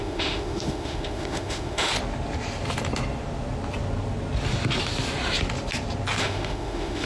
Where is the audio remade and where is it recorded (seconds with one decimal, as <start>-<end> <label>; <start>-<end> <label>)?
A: 0.0-1.9 remade; 1.9-6.2 recorded; 6.2-7.1 remade